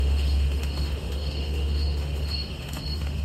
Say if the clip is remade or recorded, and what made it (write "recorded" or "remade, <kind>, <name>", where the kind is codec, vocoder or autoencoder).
remade, autoencoder, DAC-VAE